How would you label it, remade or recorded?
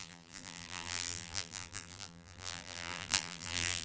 remade